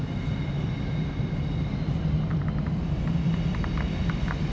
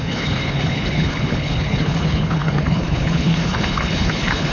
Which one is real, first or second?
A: first